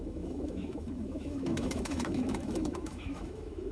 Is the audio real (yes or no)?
no